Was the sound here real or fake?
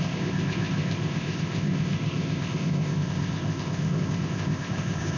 fake